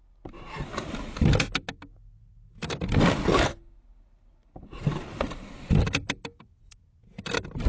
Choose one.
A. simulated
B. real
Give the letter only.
B